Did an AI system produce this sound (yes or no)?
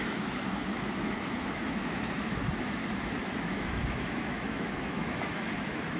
yes